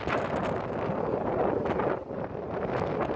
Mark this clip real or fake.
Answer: real